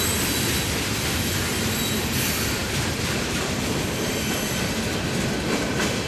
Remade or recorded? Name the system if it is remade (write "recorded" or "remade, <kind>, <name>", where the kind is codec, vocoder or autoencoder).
recorded